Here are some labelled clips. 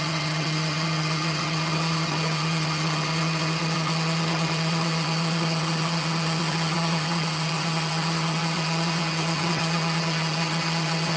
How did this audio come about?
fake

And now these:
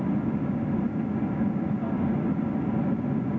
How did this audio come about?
real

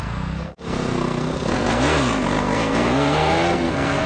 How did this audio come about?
fake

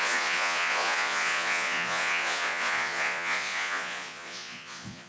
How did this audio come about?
fake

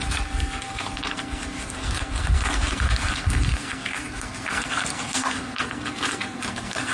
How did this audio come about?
fake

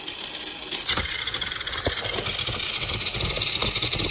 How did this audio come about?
real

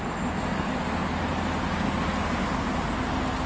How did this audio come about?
real